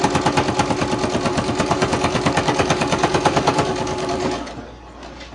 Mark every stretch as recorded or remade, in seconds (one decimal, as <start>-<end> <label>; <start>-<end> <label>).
0.0-1.3 recorded; 1.3-4.5 remade; 4.5-5.3 recorded